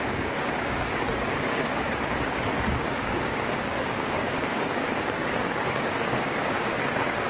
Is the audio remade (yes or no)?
yes